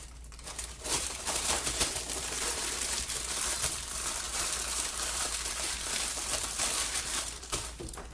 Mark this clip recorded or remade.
remade